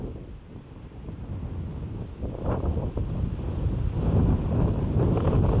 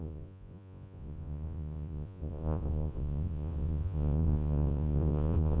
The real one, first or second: first